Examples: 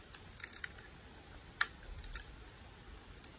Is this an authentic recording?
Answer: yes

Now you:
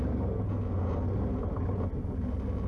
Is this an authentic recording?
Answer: yes